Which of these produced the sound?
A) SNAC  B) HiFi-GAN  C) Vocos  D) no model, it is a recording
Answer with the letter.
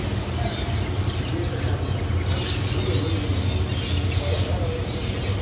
D